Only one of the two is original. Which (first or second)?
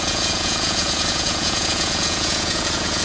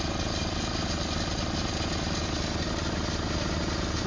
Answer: second